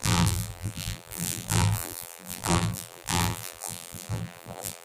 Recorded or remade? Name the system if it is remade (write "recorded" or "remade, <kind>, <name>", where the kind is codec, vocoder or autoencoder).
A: remade, vocoder, BigVGAN v2